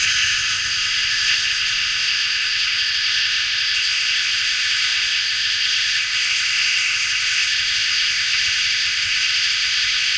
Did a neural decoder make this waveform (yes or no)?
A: yes